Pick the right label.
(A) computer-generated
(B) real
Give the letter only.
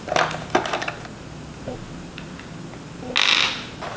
B